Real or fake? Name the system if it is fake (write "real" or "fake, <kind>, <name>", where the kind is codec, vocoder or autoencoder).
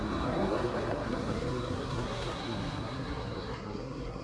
fake, codec, SNAC